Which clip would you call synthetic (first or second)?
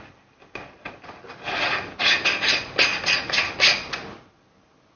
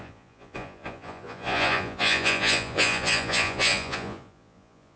second